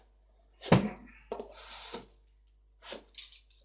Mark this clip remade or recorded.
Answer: recorded